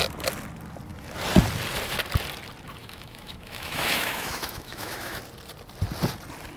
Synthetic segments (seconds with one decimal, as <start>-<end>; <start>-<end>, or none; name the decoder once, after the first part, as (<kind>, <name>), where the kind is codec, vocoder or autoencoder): 2.8-5.2 (autoencoder, DAC-VAE)